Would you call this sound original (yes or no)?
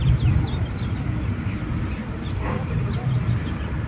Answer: yes